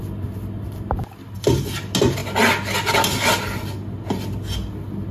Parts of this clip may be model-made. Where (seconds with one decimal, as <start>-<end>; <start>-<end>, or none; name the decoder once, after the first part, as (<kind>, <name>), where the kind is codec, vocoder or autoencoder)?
none